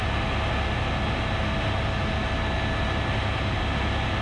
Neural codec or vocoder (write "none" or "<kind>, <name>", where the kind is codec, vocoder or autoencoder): none